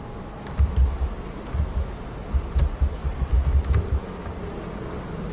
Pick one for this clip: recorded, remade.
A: recorded